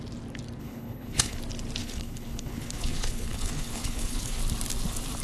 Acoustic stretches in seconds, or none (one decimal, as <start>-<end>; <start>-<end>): 0.0-0.6; 1.4-1.8; 4.4-5.2